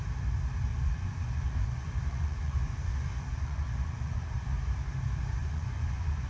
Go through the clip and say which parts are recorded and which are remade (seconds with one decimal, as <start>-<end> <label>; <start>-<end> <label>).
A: 0.0-0.7 recorded; 0.7-4.5 remade; 4.5-5.4 recorded; 5.4-6.3 remade